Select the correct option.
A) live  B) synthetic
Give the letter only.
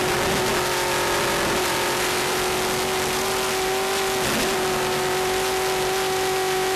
A